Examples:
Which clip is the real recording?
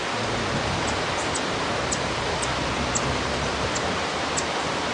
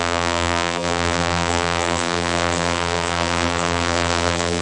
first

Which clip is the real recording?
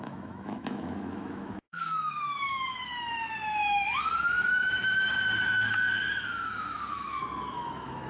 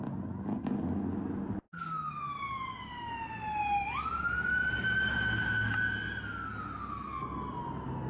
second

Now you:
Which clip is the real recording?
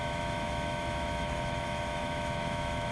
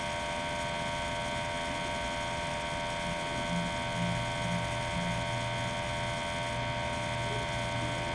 second